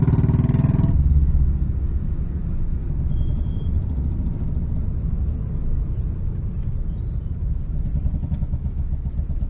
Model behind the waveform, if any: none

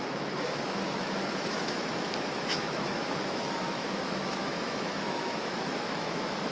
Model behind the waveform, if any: autoencoder, DAC-VAE